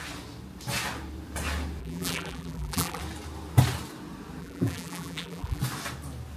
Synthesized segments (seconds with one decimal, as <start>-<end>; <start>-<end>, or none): 1.8-3.0; 4.4-5.6

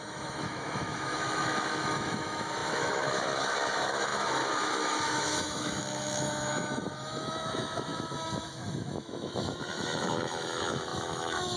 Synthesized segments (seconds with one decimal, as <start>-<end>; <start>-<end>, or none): 0.0-11.6

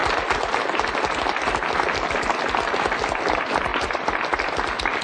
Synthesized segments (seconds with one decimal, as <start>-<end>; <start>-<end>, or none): none

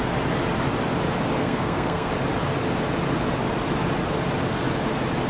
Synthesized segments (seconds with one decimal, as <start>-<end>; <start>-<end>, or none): 1.4-2.1